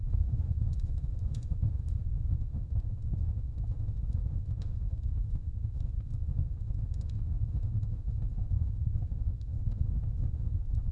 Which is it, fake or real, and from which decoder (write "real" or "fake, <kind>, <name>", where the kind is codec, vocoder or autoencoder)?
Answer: fake, autoencoder, DAC-VAE